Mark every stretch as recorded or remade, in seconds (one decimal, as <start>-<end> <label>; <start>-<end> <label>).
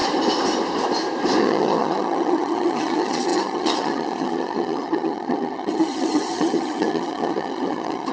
0.0-1.4 recorded; 1.4-8.1 remade